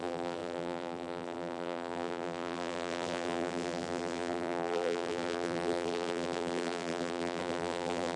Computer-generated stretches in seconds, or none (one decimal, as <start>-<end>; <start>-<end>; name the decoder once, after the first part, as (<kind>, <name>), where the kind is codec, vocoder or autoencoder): 0.0-8.2 (vocoder, BigVGAN v2)